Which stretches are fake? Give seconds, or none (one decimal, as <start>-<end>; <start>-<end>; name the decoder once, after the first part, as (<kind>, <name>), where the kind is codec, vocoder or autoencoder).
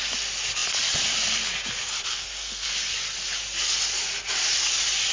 2.1-2.7 (codec, SNAC)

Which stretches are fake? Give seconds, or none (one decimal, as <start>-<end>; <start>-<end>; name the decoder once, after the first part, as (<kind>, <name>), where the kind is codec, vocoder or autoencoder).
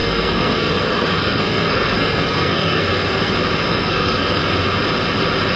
0.0-3.3 (codec, SNAC); 3.7-4.4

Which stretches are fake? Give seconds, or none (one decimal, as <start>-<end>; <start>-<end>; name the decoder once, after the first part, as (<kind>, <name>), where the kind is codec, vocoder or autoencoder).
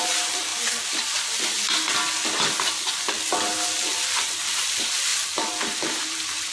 0.0-0.5 (vocoder, BigVGAN v2); 4.3-6.5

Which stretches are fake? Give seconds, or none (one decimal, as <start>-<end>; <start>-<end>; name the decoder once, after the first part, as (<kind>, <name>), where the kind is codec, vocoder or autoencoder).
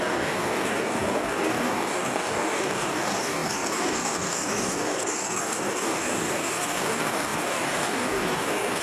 0.0-8.8 (codec, DAC)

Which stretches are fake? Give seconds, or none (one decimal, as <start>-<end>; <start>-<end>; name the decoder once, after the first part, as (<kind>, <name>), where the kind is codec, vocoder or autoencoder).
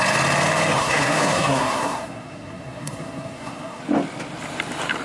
0.8-3.8 (codec, SNAC)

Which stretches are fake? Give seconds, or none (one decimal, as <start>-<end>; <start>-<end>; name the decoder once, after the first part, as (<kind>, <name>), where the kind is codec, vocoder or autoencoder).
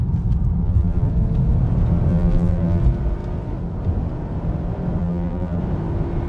0.6-1.1 (vocoder, BigVGAN v2); 2.1-2.8; 5.0-5.6